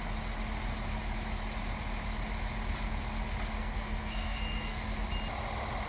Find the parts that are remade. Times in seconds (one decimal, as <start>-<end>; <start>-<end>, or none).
3.6-4.9